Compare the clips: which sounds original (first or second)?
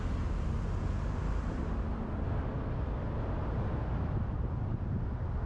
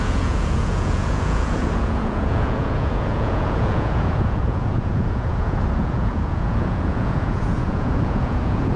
first